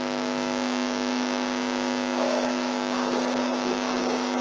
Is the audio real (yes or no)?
no